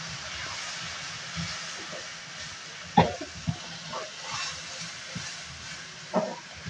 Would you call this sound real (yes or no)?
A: yes